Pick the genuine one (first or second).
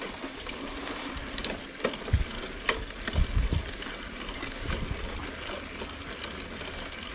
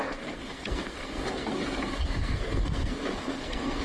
first